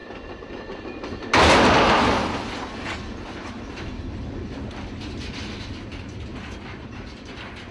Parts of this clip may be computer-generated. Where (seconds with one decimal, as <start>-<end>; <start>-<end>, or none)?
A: none